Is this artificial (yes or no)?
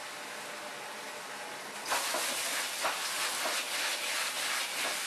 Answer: no